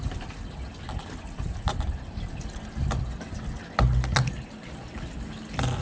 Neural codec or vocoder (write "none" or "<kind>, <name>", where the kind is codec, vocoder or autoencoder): none